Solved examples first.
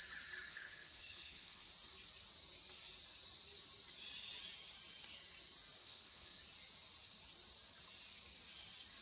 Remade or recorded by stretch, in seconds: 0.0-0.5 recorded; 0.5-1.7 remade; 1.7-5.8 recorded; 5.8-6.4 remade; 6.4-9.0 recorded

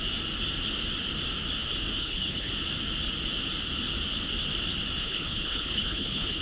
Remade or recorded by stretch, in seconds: 0.0-2.0 recorded; 2.0-2.5 remade; 2.5-5.0 recorded; 5.0-6.4 remade